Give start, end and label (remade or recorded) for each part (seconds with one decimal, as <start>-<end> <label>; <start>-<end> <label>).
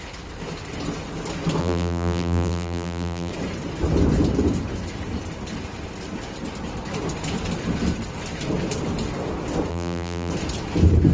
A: 0.0-1.6 recorded; 1.6-3.3 remade; 3.3-9.7 recorded; 9.7-10.3 remade; 10.3-11.1 recorded